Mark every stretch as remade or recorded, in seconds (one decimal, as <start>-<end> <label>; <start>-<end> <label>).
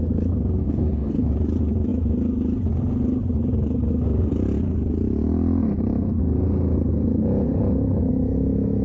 0.0-0.6 recorded; 0.6-1.3 remade; 1.3-8.8 recorded